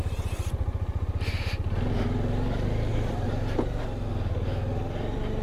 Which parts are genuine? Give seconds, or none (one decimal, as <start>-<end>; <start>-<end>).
0.0-2.9; 3.6-5.4